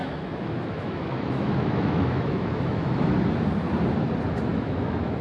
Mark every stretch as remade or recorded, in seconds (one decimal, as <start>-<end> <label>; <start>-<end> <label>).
0.0-3.1 remade; 3.1-4.5 recorded; 4.5-5.2 remade